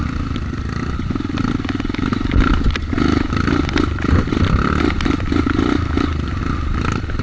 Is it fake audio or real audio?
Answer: real